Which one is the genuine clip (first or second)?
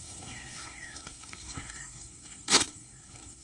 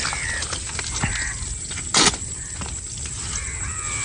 second